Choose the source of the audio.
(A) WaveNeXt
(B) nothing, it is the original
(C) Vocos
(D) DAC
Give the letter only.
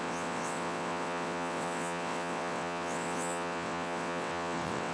A